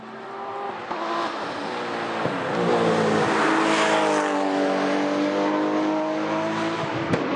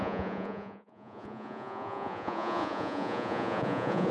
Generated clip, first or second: second